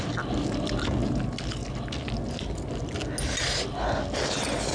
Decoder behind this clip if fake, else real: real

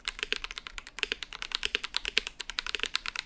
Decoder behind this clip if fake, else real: fake, vocoder, BigVGAN v2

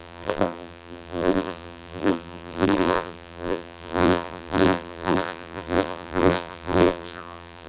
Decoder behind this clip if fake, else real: fake, vocoder, BigVGAN v2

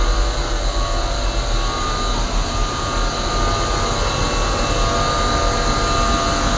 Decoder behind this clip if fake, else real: real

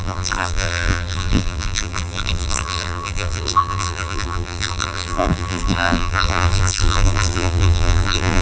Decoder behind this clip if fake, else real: fake, vocoder, BigVGAN v2